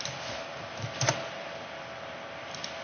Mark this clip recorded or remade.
recorded